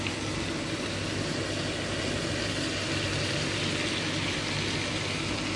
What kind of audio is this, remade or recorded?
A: recorded